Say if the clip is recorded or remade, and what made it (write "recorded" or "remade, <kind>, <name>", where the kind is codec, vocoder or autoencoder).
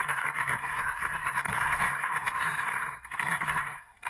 remade, codec, SNAC